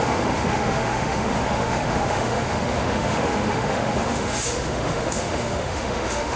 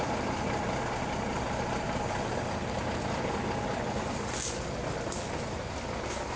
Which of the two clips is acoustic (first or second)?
second